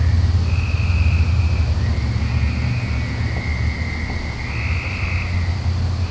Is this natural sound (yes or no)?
yes